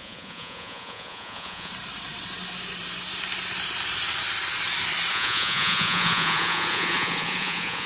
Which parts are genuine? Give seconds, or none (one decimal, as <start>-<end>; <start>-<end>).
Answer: 1.7-5.1